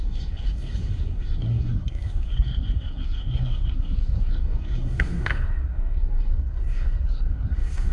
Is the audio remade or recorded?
remade